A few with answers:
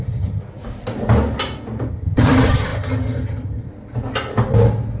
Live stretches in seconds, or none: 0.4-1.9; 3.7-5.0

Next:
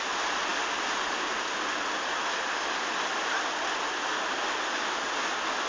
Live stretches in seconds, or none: 0.0-5.7

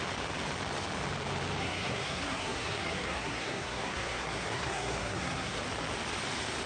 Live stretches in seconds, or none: 0.0-1.6; 5.6-6.7

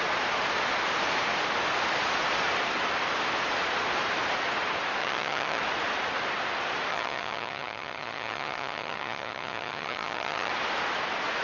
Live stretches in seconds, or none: 0.0-5.0; 5.6-6.9; 10.5-11.4

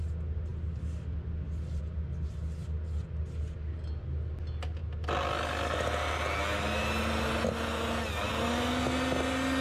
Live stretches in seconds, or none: 0.0-9.6

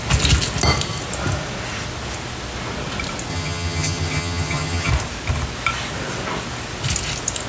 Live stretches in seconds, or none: 0.0-3.3; 4.9-7.5

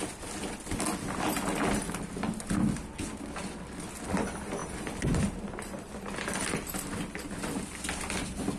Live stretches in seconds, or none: 0.0-8.6

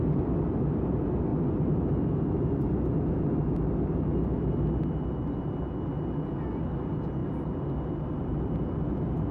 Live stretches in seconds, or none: 0.0-7.2